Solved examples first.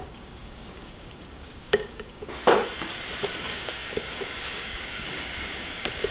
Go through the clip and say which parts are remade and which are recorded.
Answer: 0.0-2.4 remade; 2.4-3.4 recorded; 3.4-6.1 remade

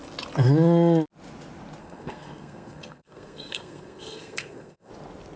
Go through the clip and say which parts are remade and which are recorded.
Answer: 0.0-1.8 recorded; 1.8-4.9 remade; 4.9-5.4 recorded